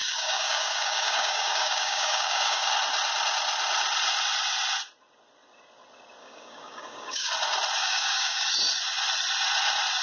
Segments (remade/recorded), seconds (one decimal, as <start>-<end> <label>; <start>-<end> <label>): 0.0-2.7 remade; 2.7-6.2 recorded; 6.2-7.3 remade; 7.3-7.8 recorded; 7.8-8.5 remade; 8.5-10.0 recorded